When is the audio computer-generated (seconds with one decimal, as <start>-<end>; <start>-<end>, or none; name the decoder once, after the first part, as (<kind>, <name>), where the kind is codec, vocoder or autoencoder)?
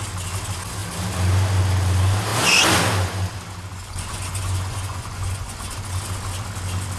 3.7-5.7 (vocoder, Vocos)